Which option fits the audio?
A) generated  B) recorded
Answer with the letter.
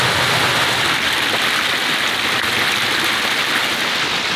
B